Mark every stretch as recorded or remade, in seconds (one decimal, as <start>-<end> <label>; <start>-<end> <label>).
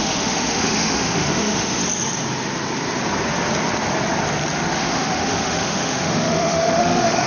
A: 0.0-1.8 remade; 1.8-4.8 recorded; 4.8-7.3 remade